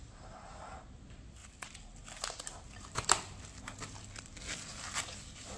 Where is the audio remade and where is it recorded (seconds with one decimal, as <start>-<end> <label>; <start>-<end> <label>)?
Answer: 0.0-5.6 recorded